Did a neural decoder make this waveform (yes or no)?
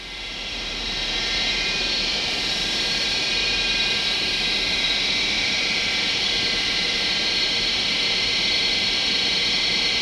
yes